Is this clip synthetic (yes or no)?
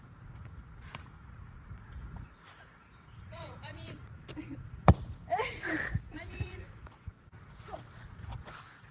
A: yes